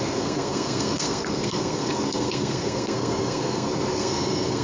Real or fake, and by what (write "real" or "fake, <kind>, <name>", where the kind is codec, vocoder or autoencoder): fake, codec, SNAC